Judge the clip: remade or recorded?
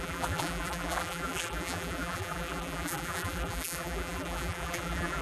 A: remade